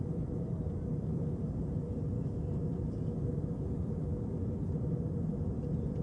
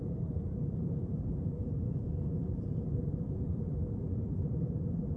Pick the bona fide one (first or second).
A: first